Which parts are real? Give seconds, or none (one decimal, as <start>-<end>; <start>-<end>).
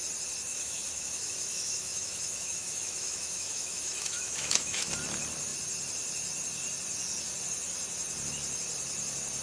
0.0-0.5; 4.9-9.4